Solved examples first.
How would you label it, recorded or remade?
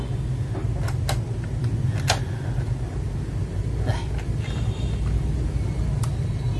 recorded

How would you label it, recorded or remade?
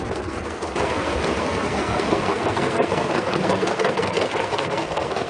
remade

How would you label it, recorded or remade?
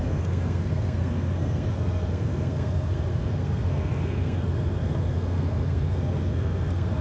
remade